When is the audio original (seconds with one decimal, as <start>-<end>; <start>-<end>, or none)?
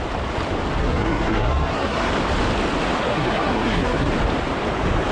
0.0-0.8; 2.1-3.1; 4.1-5.1